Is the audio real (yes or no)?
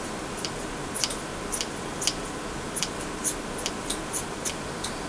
yes